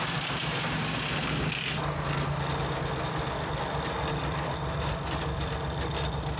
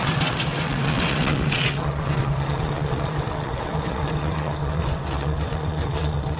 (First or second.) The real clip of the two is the first